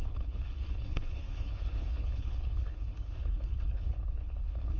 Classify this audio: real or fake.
fake